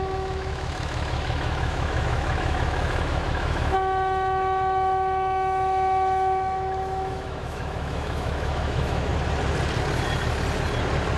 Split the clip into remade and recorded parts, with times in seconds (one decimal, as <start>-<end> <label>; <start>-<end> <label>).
0.0-9.1 remade; 9.1-11.2 recorded